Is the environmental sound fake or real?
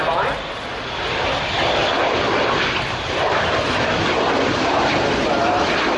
real